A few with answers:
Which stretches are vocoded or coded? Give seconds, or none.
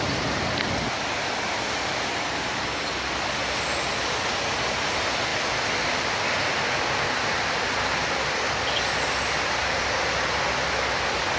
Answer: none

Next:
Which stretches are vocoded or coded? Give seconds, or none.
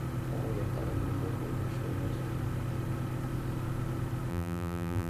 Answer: 4.3-5.1 (vocoder, BigVGAN v2)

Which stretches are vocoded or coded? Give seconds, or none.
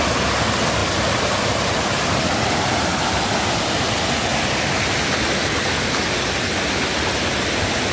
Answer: 0.8-3.0 (vocoder, BigVGAN v2)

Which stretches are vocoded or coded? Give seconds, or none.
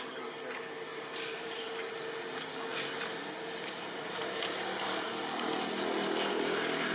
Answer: 0.9-1.8 (vocoder, BigVGAN v2)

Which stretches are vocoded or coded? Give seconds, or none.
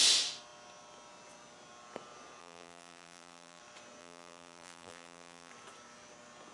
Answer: 2.4-3.6 (vocoder, BigVGAN v2); 4.0-5.5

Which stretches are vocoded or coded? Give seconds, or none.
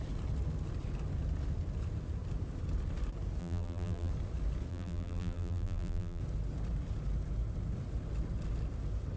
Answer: 3.4-4.1 (vocoder, BigVGAN v2); 4.7-6.2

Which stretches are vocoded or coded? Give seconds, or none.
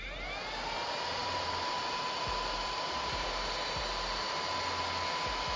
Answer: 1.2-3.4 (vocoder, BigVGAN v2)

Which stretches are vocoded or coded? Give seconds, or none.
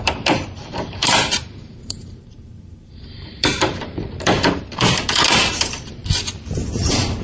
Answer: 0.0-6.0 (vocoder, BigVGAN v2); 6.8-7.2